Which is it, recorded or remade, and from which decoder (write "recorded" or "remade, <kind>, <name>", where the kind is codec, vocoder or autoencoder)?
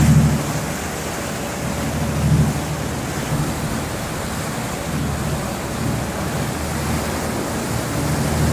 recorded